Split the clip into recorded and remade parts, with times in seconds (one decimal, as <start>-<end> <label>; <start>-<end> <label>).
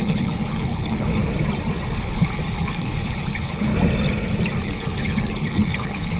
0.0-1.2 remade; 1.2-2.0 recorded; 2.0-3.7 remade; 3.7-4.6 recorded; 4.6-6.2 remade